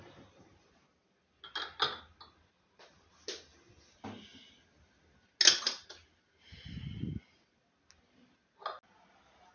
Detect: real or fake real